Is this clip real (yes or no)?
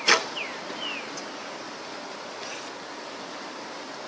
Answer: yes